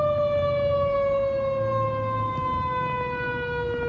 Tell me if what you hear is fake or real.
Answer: real